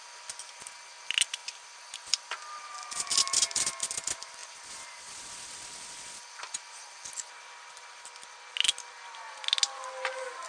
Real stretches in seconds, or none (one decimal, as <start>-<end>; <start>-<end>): 0.0-10.5